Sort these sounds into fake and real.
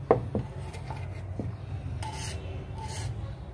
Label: real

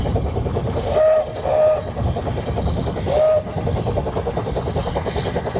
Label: real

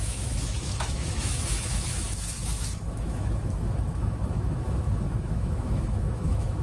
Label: fake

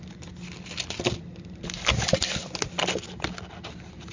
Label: real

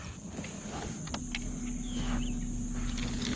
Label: real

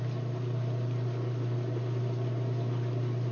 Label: real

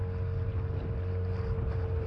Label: real